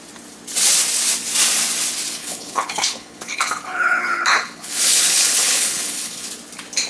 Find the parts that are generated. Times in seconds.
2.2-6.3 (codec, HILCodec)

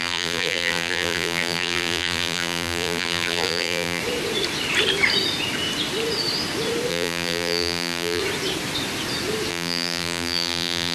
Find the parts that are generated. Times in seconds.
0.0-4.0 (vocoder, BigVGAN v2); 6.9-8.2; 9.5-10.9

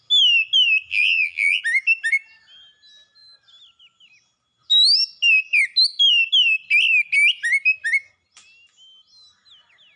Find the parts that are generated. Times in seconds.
0.9-1.6 (vocoder, BigVGAN v2)

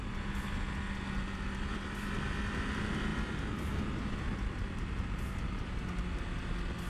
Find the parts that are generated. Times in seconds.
none

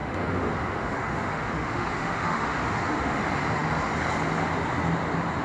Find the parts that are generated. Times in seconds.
0.0-3.2 (autoencoder, DAC-VAE)